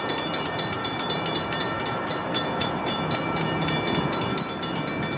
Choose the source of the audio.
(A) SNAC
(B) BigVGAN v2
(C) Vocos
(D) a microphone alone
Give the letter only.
B